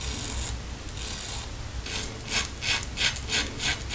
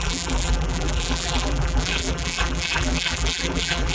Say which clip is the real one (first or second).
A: first